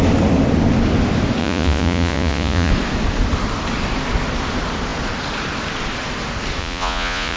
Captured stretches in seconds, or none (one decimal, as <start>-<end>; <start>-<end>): 0.0-1.4; 2.7-6.6